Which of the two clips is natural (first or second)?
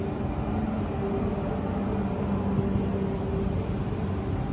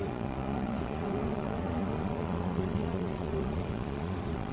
first